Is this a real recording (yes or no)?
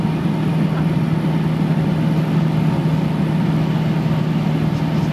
yes